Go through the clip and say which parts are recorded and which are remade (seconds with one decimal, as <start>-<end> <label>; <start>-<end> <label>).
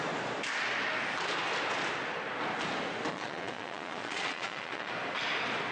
0.0-3.1 recorded; 3.1-4.9 remade; 4.9-5.7 recorded